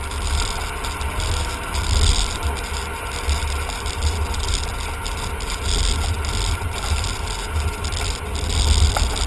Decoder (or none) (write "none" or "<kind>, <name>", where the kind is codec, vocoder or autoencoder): none